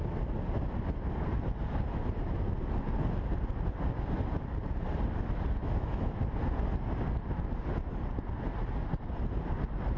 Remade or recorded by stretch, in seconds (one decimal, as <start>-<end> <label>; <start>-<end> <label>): 0.0-5.6 recorded; 5.6-6.1 remade; 6.1-10.0 recorded